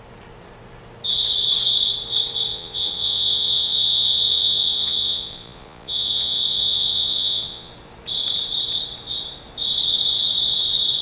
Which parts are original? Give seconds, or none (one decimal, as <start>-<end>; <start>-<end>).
0.0-2.5; 7.7-11.0